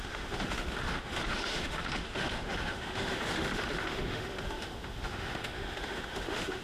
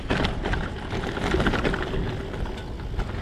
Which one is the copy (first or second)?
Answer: first